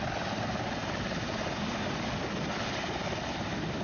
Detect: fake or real real